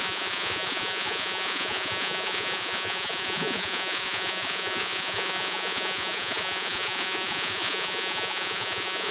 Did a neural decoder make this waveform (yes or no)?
yes